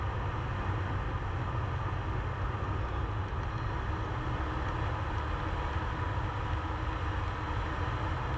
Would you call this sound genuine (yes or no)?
yes